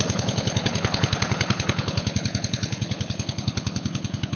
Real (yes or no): no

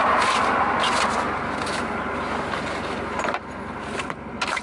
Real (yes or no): yes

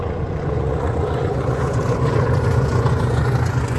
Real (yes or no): no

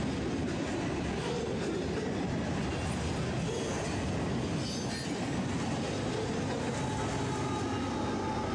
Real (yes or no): yes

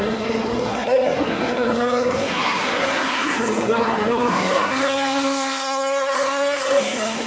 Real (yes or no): no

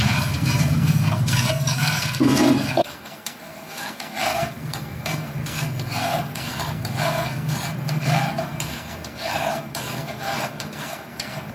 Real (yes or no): no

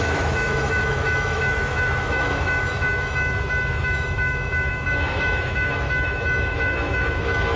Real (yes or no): no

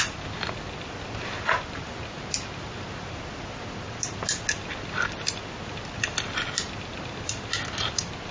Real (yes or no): yes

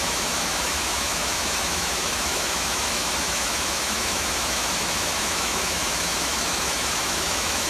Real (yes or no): no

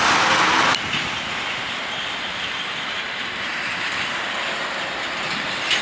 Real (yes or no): yes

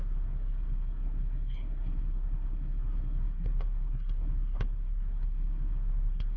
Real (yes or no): no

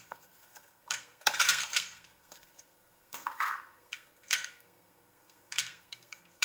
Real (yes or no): no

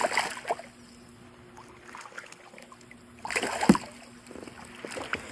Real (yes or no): yes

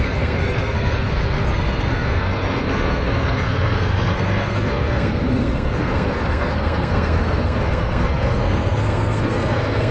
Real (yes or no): no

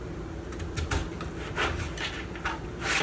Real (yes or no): yes